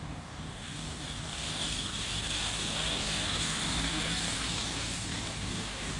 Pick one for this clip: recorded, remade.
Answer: remade